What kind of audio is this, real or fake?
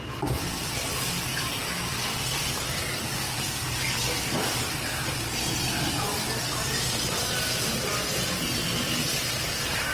real